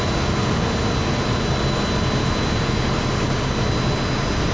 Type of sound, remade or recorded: recorded